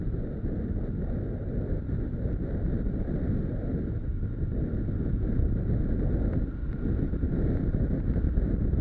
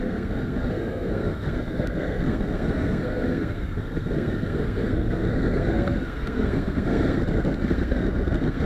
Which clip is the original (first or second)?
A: first